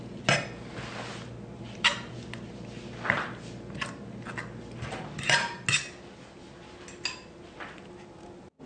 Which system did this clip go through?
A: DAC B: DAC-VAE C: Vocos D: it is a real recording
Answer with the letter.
D